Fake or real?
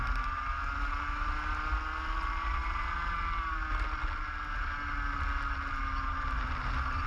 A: real